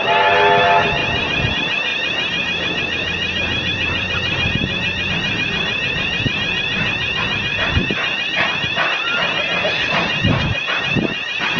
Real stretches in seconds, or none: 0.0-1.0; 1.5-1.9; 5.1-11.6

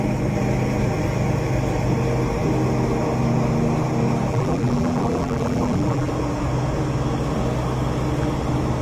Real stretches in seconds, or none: 0.0-4.3; 6.1-8.8